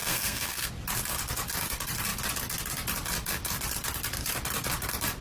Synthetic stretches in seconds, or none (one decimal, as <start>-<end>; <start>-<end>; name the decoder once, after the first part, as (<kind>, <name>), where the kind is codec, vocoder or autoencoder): 0.0-0.7 (codec, SNAC)